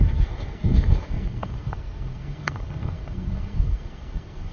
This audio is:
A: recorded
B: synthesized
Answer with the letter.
B